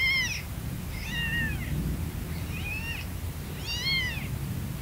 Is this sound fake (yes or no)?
no